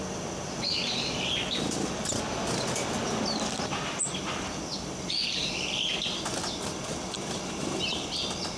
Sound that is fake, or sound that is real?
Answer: real